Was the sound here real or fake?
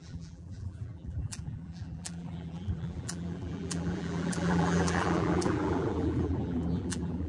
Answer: fake